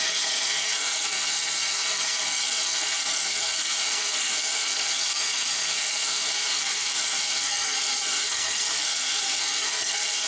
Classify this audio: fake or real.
fake